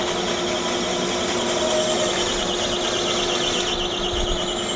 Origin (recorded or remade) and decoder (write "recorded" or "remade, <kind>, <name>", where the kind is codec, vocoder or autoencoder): recorded